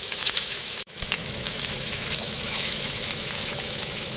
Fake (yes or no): yes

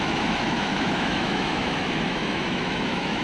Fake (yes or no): yes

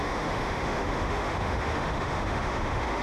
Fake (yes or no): yes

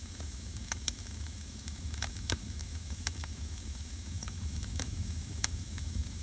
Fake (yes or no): yes